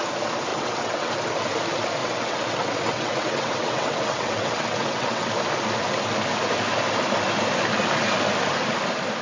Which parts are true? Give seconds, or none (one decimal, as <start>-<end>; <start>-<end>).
0.0-0.5; 1.1-2.0; 5.3-9.2